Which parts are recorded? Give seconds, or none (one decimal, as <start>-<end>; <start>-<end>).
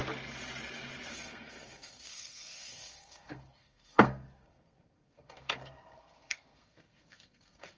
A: 0.0-1.1